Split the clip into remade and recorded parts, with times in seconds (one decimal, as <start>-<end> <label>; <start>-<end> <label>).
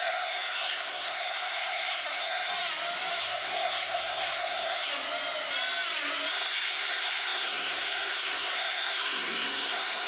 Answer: 0.0-2.5 remade; 2.5-3.2 recorded; 3.2-4.9 remade; 4.9-6.3 recorded; 6.3-10.1 remade